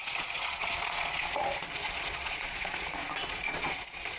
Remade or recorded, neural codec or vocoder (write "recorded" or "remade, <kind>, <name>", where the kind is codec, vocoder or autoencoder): remade, vocoder, Vocos